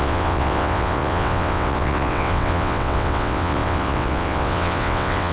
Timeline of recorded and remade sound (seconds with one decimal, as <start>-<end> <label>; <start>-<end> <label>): 0.0-5.3 remade